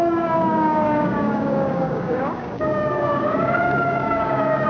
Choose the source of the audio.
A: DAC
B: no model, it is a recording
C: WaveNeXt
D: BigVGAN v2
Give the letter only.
A